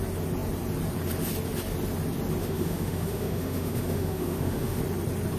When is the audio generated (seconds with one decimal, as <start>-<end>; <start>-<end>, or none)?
2.4-4.8